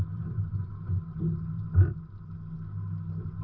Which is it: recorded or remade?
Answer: recorded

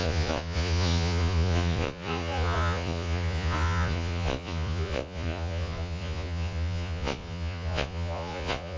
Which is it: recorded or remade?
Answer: remade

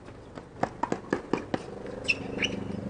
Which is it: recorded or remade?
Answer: recorded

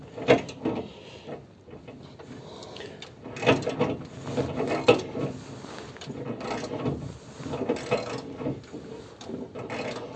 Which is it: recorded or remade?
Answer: recorded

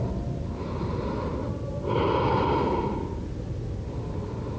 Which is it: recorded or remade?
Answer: recorded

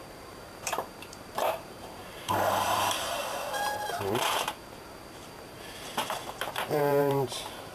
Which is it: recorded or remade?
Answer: remade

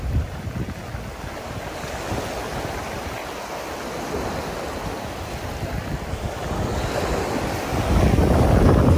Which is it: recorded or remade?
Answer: recorded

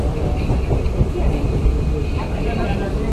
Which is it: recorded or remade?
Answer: recorded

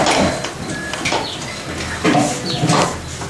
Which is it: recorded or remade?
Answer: recorded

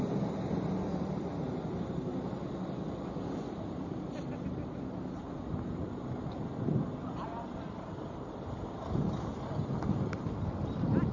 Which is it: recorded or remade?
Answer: recorded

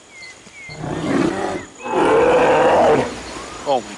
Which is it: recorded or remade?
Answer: recorded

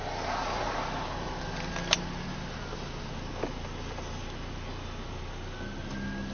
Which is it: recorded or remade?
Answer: recorded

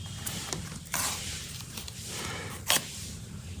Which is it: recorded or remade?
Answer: remade